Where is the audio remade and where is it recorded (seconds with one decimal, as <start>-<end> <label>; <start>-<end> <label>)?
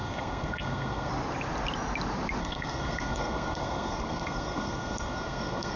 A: 0.0-1.1 remade; 1.1-2.4 recorded; 2.4-5.8 remade